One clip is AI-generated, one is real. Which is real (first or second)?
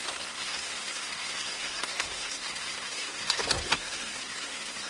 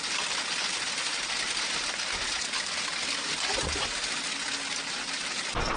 second